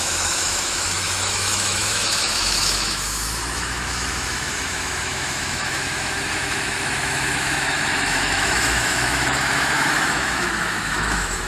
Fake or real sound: fake